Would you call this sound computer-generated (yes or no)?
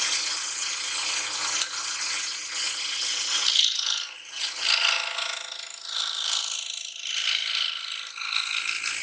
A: no